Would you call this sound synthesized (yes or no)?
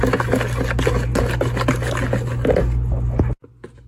no